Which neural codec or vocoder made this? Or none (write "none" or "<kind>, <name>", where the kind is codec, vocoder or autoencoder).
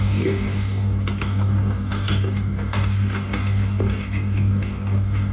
codec, DAC